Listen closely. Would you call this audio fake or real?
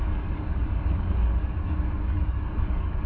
fake